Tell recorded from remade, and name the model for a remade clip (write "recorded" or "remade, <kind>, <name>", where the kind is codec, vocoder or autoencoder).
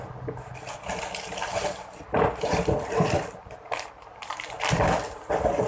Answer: recorded